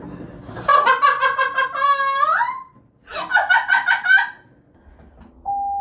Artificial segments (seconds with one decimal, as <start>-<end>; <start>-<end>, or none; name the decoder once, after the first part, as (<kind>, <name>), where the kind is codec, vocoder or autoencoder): none